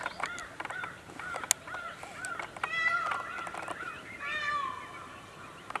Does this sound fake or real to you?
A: real